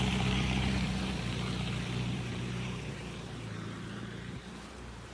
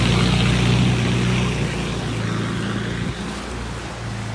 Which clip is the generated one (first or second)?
first